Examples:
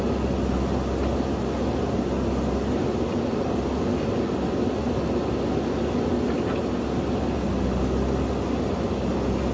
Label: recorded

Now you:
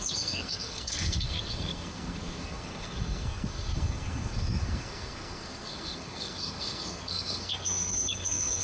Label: remade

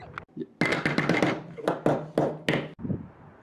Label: recorded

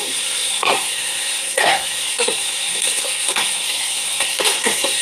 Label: remade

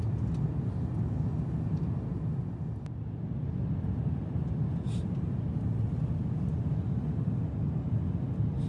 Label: recorded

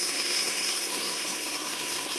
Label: remade